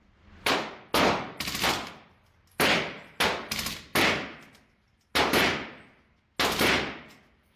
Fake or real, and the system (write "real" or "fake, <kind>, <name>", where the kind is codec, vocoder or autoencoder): real